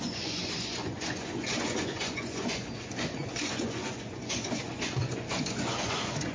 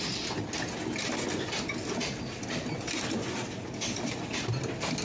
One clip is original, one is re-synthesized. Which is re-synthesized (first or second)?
first